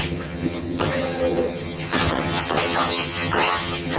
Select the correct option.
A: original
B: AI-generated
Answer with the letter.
B